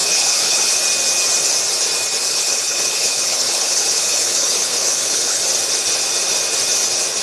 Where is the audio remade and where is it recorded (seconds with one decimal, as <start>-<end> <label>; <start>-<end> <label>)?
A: 0.0-0.8 remade; 0.8-2.2 recorded; 2.2-5.4 remade; 5.4-7.2 recorded